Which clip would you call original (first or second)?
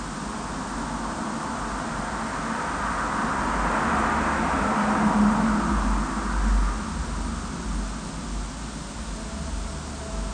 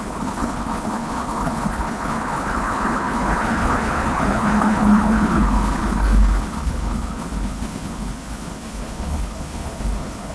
first